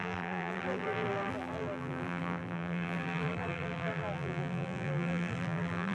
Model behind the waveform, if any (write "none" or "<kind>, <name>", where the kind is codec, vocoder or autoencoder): vocoder, BigVGAN v2